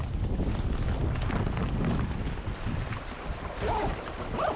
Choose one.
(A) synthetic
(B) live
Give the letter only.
B